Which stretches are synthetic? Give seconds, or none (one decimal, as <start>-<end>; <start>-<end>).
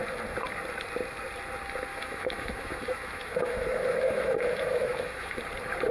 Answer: 1.9-5.4